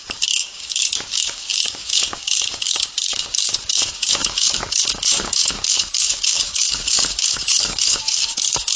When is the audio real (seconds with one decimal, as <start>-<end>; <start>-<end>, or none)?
none